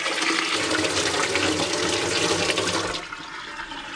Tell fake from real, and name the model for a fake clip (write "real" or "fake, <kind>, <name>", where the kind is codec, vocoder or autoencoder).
real